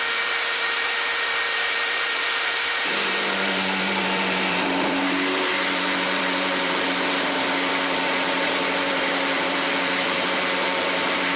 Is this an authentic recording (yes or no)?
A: no